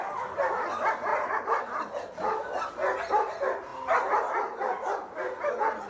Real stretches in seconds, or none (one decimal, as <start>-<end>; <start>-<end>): 0.0-5.9